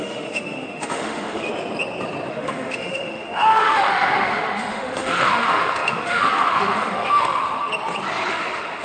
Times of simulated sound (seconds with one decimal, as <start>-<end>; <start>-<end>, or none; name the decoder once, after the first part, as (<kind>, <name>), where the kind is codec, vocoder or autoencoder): 0.0-1.5 (autoencoder, DAC-VAE); 2.3-7.7; 8.3-8.8